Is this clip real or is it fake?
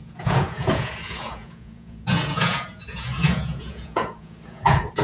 fake